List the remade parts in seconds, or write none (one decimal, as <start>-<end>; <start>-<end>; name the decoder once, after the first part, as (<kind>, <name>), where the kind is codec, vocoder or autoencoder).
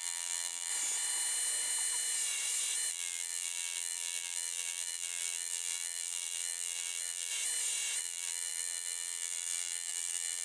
0.0-0.7 (vocoder, BigVGAN v2); 2.9-7.3; 8.0-10.4